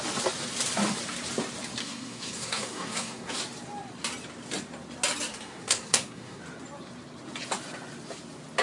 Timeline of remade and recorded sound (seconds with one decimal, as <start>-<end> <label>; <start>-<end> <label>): 0.0-1.8 recorded; 1.8-3.4 remade; 3.4-5.3 recorded; 5.3-6.4 remade; 6.4-8.6 recorded